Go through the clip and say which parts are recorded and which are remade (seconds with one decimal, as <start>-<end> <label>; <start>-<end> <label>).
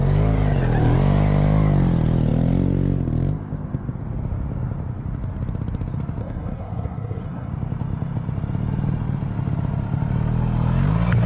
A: 0.0-6.2 recorded; 6.2-7.5 remade; 7.5-11.3 recorded